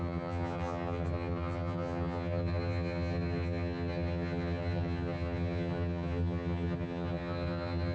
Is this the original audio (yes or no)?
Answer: no